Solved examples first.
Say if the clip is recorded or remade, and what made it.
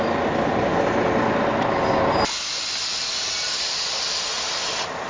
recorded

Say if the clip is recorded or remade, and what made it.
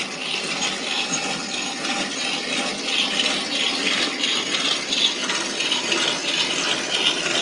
recorded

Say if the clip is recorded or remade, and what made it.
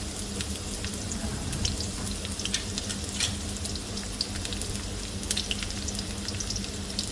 recorded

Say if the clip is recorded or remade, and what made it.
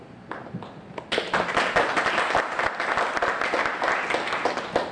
recorded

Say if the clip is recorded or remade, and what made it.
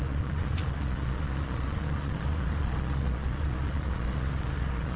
remade, vocoder, Vocos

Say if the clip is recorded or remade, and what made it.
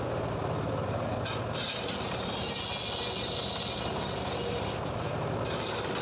recorded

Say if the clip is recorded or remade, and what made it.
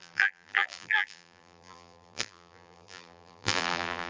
remade, vocoder, BigVGAN v2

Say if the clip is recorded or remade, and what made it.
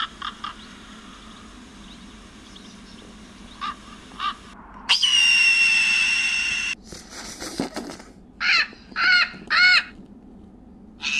recorded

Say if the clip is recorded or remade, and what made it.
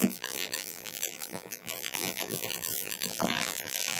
remade, vocoder, BigVGAN v2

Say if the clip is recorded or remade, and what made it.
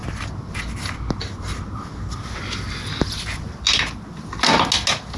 recorded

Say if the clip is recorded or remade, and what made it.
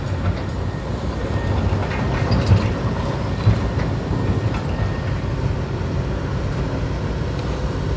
recorded